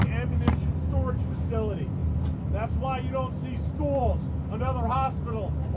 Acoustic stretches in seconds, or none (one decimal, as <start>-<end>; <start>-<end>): 0.0-5.8